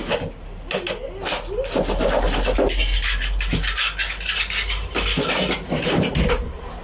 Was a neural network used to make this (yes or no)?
no